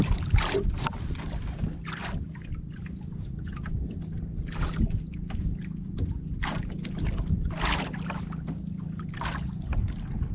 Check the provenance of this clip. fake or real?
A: real